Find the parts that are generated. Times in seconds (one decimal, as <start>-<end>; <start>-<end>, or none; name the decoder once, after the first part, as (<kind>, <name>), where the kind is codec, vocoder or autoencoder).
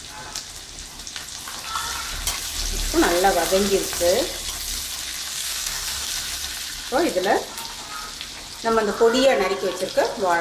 5.3-6.1 (codec, DAC)